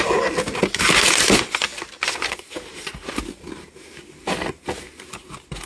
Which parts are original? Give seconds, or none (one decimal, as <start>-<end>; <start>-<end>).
0.0-5.7